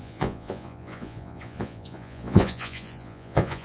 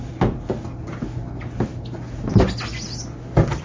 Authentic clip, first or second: second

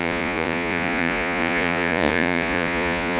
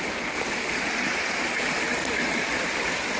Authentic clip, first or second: second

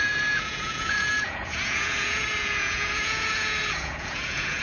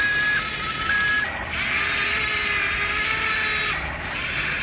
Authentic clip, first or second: second